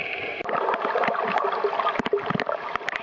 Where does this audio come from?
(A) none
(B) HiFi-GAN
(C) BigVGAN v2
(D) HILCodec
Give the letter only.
A